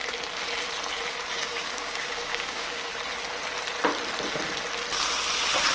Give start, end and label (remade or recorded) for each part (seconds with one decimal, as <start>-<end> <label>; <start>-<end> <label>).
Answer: 0.0-1.3 recorded; 1.3-2.9 remade; 2.9-5.7 recorded